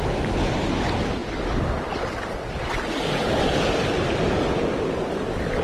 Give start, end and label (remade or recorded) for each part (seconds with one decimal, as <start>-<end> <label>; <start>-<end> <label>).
0.0-5.6 recorded